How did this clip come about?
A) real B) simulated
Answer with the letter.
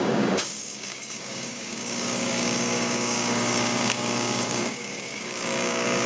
B